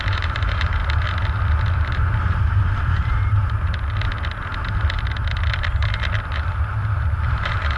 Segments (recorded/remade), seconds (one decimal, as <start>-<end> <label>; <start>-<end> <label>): 0.0-0.8 remade; 0.8-1.7 recorded; 1.7-3.4 remade; 3.4-7.3 recorded; 7.3-7.8 remade